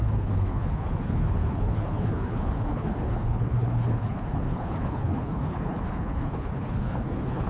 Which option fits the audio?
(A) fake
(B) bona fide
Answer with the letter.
A